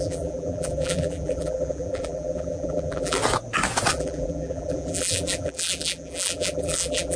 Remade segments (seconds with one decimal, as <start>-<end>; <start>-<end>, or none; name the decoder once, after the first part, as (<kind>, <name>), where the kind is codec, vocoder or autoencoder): 0.0-3.2 (vocoder, BigVGAN v2); 3.9-7.2